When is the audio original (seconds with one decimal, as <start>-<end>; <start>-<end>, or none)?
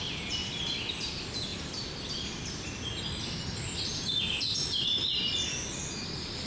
0.0-0.4; 1.1-1.5; 2.8-6.5